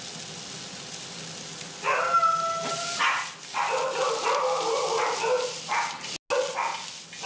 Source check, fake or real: real